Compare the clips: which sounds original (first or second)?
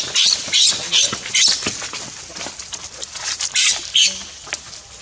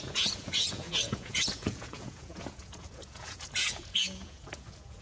first